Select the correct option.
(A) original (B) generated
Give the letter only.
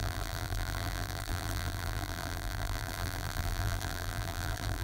B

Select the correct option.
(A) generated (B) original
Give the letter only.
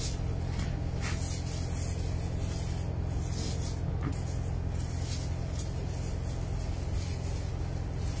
B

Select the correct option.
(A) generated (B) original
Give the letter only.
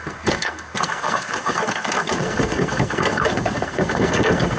A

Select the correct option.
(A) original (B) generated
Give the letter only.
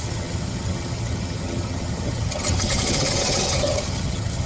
B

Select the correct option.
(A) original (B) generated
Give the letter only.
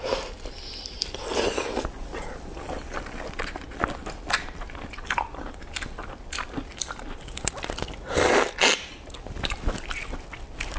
A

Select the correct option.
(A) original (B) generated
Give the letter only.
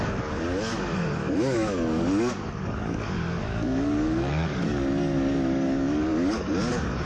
B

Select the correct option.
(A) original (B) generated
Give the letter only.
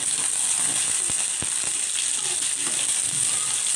A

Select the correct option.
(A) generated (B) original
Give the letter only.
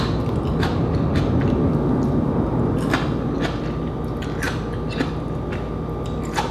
B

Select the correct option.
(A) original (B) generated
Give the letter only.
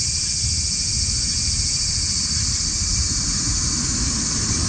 A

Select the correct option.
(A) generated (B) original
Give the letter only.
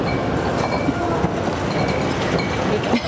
B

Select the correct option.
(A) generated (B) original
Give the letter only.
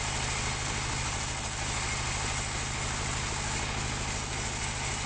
B